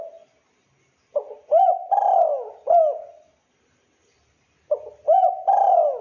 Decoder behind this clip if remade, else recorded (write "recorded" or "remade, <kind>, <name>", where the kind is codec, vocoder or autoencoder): recorded